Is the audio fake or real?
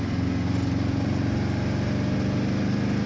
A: real